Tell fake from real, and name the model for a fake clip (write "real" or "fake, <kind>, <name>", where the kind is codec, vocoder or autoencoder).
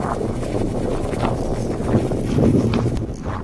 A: fake, vocoder, BigVGAN v2